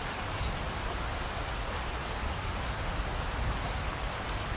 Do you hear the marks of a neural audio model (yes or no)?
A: no